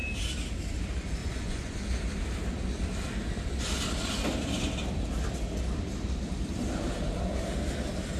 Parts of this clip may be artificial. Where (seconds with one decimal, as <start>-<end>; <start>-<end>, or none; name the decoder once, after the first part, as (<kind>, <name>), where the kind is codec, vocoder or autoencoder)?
1.2-1.8 (vocoder, Vocos)